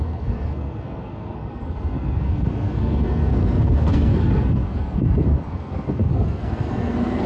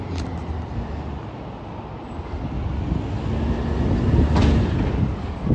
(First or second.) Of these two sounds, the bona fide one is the second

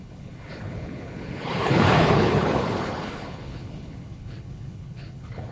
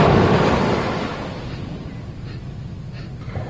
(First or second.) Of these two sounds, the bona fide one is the second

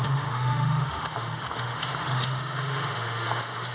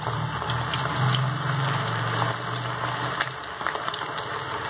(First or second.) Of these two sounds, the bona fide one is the second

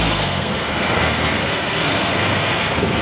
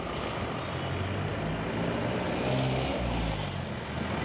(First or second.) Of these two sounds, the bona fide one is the second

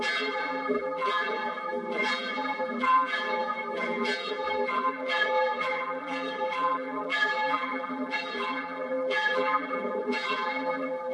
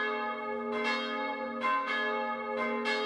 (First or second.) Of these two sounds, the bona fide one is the second